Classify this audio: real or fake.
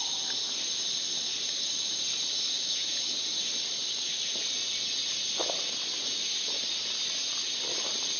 real